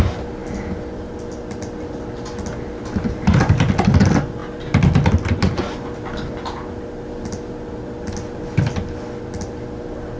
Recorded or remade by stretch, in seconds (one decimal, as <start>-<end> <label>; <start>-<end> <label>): 0.0-10.2 recorded